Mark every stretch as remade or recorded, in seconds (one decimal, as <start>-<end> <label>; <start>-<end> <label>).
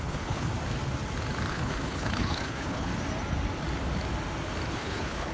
0.0-0.5 remade; 0.5-1.5 recorded; 1.5-2.9 remade; 2.9-4.7 recorded; 4.7-5.3 remade